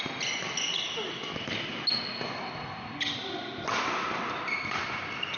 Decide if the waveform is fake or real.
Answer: real